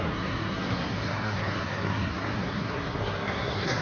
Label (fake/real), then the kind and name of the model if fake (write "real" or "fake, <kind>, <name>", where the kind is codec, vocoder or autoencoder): fake, codec, SNAC